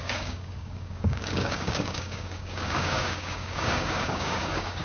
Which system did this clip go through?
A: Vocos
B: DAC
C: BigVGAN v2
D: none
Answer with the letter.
B